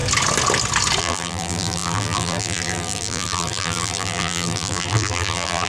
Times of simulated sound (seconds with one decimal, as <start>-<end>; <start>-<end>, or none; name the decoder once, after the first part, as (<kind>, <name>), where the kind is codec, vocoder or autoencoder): 1.0-5.7 (vocoder, BigVGAN v2)